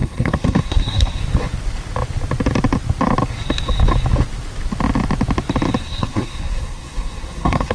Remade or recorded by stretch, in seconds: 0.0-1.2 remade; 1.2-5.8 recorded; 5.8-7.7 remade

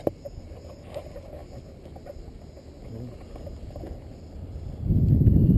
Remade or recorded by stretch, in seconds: 0.0-5.6 recorded